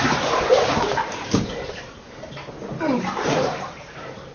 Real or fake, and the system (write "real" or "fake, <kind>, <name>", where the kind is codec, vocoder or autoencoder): fake, vocoder, BigVGAN v2